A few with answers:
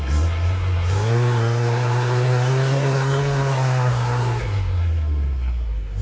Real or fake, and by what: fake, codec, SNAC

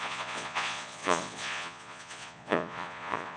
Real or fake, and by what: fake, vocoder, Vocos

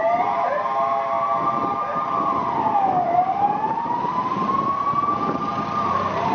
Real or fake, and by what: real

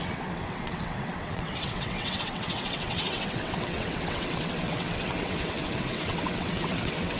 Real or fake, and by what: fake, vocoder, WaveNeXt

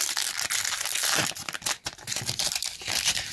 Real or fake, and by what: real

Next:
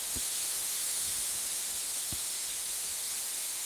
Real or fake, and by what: fake, autoencoder, DAC-VAE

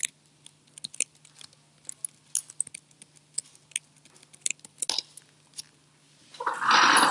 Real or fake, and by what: real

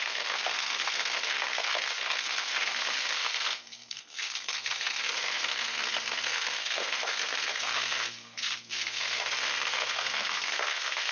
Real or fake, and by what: fake, codec, SNAC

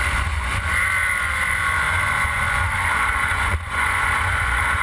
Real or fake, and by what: fake, vocoder, Vocos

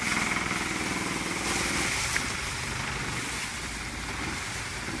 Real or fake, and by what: real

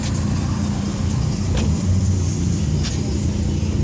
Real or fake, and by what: fake, vocoder, BigVGAN v2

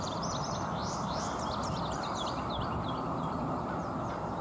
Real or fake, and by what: fake, vocoder, BigVGAN v2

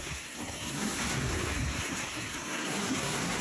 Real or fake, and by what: fake, codec, SNAC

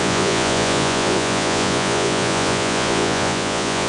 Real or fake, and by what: fake, vocoder, Vocos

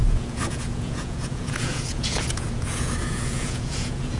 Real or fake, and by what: fake, vocoder, Vocos